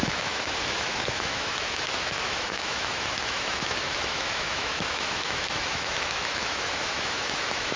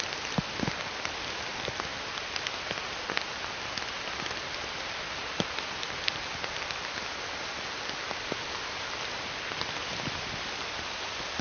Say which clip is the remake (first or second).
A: first